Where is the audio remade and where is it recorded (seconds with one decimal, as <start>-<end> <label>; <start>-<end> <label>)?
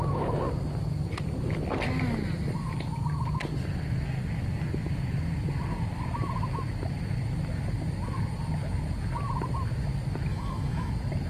0.0-10.3 recorded; 10.3-10.9 remade; 10.9-11.3 recorded